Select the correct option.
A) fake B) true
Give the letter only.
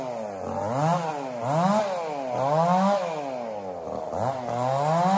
B